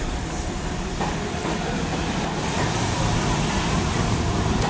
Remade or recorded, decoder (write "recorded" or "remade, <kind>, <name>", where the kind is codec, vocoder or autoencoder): remade, vocoder, BigVGAN v2